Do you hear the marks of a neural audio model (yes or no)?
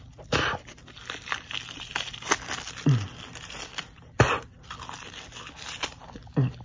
no